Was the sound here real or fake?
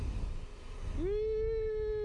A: real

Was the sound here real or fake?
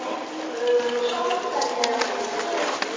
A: real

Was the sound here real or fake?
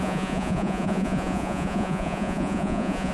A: fake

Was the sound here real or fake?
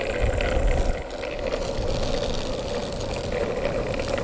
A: real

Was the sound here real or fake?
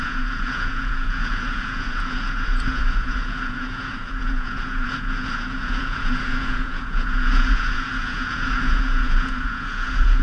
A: fake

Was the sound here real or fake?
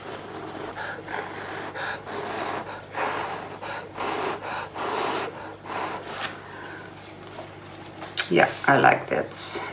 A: real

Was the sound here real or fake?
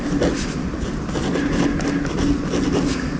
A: real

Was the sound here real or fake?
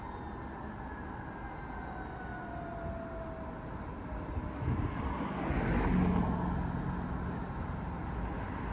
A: real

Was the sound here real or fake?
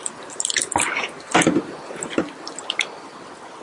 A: real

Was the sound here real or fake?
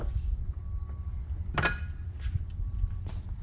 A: real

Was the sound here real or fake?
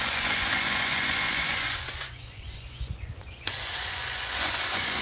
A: fake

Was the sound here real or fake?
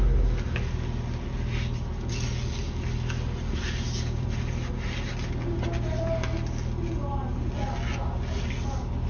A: real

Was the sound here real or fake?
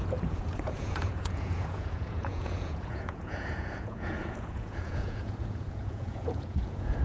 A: fake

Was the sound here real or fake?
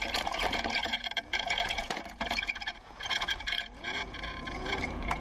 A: fake